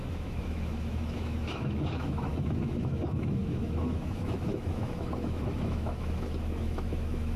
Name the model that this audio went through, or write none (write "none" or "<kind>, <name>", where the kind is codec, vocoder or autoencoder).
autoencoder, DAC-VAE